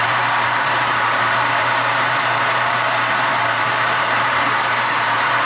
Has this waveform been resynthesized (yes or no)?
yes